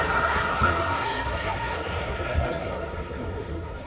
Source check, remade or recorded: remade